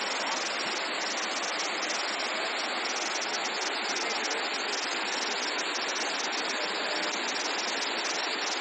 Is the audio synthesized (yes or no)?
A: no